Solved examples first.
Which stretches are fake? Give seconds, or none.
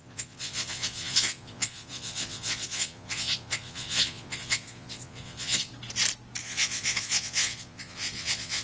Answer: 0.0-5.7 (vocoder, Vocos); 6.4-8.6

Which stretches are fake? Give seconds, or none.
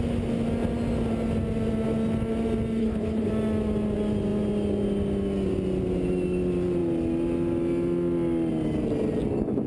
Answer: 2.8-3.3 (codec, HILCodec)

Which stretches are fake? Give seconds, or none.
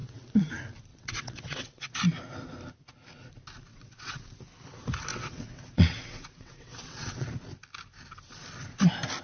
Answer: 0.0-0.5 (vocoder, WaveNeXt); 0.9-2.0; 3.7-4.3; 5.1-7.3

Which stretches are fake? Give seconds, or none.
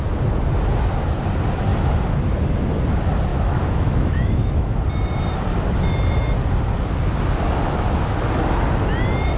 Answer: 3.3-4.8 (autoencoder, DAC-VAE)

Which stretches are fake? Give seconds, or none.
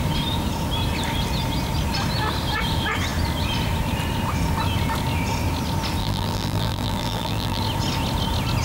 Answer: 6.0-7.6 (vocoder, BigVGAN v2)